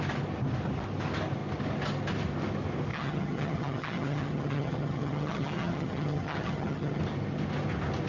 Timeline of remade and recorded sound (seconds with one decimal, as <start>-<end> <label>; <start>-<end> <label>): 0.0-2.9 recorded; 2.9-7.0 remade; 7.0-8.1 recorded